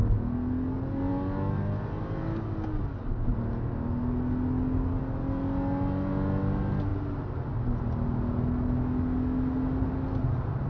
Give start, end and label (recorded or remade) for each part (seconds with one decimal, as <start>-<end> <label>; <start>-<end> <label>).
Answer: 0.0-10.7 recorded